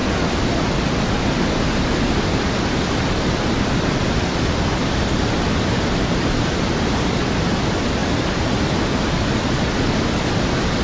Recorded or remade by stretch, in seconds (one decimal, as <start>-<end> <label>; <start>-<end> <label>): 0.0-10.8 recorded